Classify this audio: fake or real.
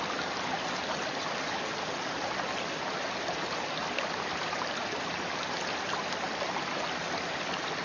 real